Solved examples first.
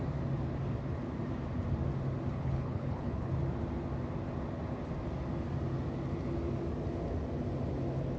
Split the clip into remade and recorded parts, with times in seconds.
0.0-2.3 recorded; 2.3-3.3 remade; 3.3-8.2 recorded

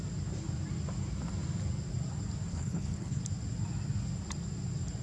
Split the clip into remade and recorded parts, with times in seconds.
0.0-2.5 recorded; 2.5-3.2 remade; 3.2-5.0 recorded

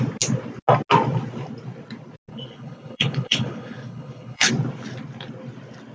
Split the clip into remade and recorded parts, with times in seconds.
0.0-2.3 recorded; 2.3-4.5 remade; 4.5-5.9 recorded